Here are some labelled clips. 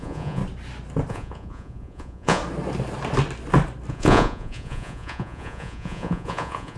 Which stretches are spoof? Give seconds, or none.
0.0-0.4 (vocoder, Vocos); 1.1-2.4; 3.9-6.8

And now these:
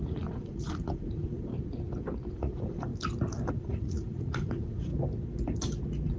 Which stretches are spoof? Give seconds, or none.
0.0-1.5 (vocoder, Vocos); 2.3-2.9; 3.5-4.9

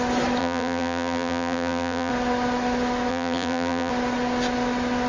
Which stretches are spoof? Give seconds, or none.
0.4-2.1 (vocoder, BigVGAN v2); 3.1-3.9

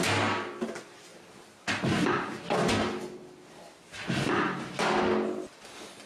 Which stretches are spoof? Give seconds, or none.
none

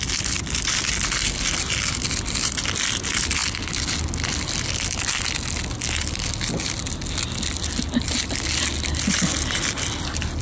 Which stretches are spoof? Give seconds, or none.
none

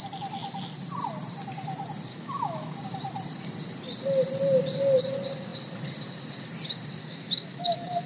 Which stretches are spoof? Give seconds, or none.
2.1-2.8 (autoencoder, DAC-VAE); 7.0-8.1

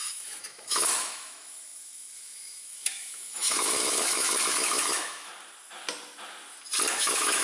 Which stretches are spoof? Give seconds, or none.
0.0-5.3 (autoencoder, DAC-VAE); 6.9-7.4

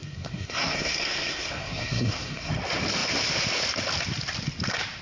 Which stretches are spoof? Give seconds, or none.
0.0-2.5 (codec, SNAC)